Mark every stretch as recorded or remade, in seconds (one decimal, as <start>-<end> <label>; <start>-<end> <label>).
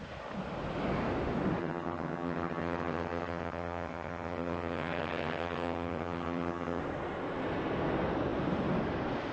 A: 0.0-1.6 recorded; 1.6-6.8 remade; 6.8-9.3 recorded